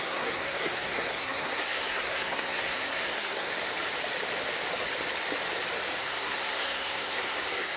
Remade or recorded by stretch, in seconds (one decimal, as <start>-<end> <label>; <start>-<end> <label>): 0.0-3.5 remade; 3.5-6.0 recorded; 6.0-7.8 remade